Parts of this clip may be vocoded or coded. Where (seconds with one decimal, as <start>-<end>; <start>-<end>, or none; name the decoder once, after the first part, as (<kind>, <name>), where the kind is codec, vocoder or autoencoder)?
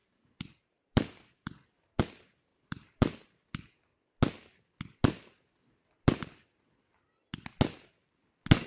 0.0-2.0 (vocoder, BigVGAN v2); 2.5-3.2